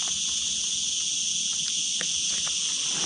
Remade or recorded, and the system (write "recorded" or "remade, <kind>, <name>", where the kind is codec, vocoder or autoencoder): recorded